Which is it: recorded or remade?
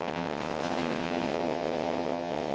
remade